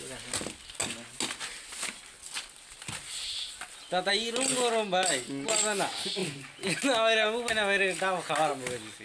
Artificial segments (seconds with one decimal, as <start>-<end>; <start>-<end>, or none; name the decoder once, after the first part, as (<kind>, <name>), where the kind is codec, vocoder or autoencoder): none